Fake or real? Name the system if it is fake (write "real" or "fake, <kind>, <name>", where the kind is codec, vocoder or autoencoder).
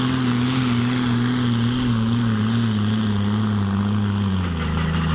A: real